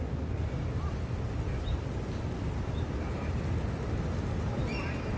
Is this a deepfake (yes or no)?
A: no